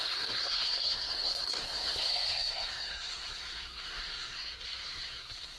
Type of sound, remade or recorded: remade